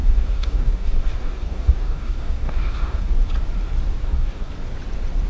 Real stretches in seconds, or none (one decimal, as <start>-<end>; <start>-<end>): 3.1-4.0; 4.5-5.3